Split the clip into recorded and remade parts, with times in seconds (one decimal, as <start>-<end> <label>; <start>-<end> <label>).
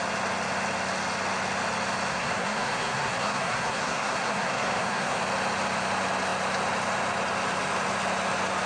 0.0-2.1 recorded; 2.1-5.2 remade; 5.2-8.7 recorded